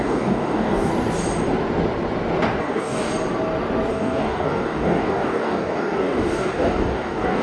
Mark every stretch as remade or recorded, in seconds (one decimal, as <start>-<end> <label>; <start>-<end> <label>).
0.0-0.9 remade; 0.9-2.6 recorded; 2.6-3.1 remade; 3.1-3.9 recorded; 3.9-7.4 remade

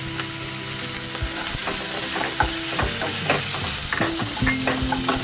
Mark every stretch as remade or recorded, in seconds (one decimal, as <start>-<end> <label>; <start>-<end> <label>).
0.0-5.2 recorded

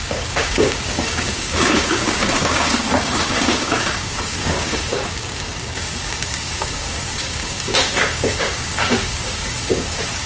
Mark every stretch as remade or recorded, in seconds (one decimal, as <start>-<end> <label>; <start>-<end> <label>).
0.0-10.3 remade

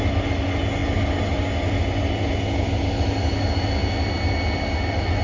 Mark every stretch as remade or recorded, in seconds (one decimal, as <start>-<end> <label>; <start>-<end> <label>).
0.0-5.2 recorded

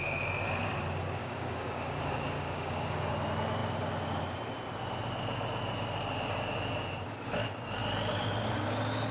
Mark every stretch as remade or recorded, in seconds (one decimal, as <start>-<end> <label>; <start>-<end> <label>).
0.0-1.2 recorded; 1.2-3.1 remade; 3.1-9.1 recorded